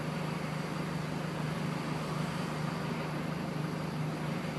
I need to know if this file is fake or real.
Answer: real